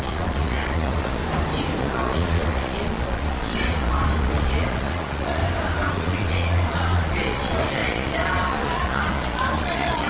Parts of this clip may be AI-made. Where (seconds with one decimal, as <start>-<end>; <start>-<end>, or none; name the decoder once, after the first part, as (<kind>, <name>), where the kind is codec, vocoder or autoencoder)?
0.0-1.2 (vocoder, Vocos); 1.8-5.4; 5.9-10.1